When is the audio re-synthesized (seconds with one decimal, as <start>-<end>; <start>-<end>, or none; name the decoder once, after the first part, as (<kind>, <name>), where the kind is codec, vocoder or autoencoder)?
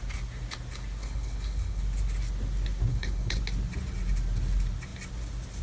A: 1.0-1.8 (codec, HILCodec); 2.9-3.4